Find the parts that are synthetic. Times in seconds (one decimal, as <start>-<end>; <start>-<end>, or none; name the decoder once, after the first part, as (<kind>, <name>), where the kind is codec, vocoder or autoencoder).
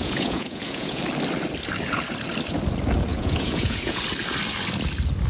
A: 0.0-1.0 (vocoder, Vocos); 3.1-4.0